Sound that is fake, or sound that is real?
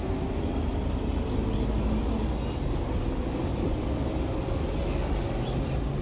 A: real